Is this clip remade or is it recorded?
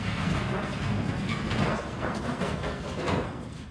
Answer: remade